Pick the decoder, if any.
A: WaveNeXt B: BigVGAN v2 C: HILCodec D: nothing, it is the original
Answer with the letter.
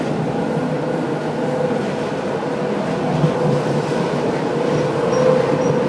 D